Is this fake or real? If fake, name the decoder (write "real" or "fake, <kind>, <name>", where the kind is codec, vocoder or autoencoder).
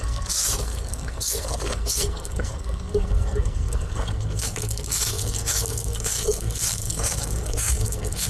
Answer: fake, codec, SNAC